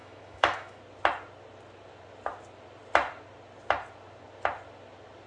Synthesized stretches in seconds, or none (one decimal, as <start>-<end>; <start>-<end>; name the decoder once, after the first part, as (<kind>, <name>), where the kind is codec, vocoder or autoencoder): 0.0-0.8 (autoencoder, DAC-VAE)